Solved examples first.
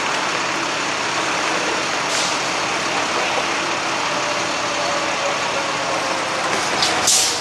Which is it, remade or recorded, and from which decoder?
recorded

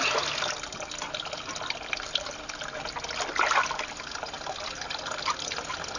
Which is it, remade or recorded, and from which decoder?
recorded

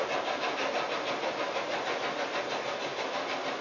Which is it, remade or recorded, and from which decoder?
recorded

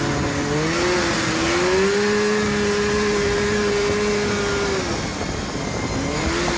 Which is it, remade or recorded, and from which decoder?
recorded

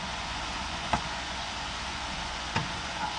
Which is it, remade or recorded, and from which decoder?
remade, vocoder, Vocos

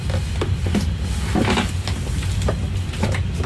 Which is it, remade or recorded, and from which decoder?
recorded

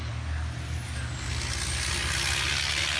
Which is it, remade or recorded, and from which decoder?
recorded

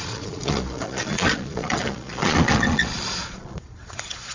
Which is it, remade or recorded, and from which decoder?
remade, vocoder, Vocos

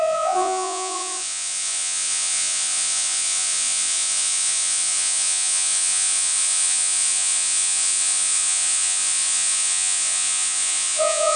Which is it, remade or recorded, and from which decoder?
remade, vocoder, Vocos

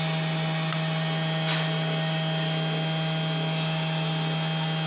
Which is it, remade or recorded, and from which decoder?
recorded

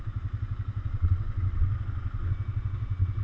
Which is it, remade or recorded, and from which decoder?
recorded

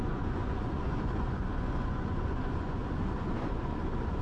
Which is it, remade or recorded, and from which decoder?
remade, vocoder, Vocos